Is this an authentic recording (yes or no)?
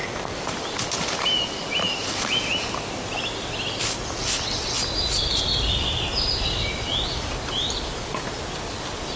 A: yes